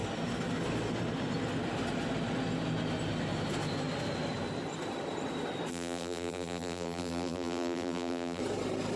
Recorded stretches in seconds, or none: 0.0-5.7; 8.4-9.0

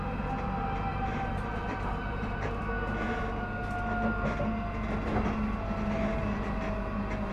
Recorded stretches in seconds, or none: 0.0-0.9; 2.6-7.3

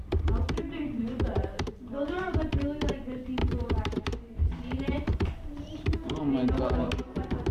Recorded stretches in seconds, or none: 0.0-1.0; 2.4-3.4; 6.2-7.5

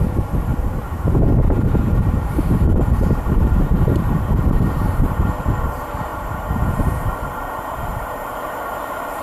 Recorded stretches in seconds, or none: 0.0-0.5; 5.3-6.1; 7.5-7.9